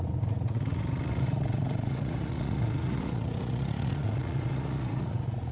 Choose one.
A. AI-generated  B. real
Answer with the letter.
A